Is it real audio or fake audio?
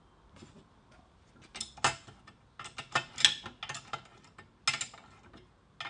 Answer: real